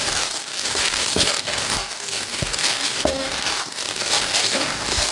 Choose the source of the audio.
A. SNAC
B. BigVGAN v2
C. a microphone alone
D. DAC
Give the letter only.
D